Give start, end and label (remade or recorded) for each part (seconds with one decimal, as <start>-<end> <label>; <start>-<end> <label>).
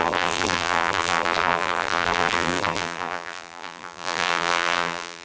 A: 0.0-5.2 remade